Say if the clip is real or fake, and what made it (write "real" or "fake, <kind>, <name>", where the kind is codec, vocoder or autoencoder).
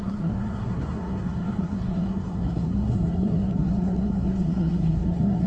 fake, codec, SNAC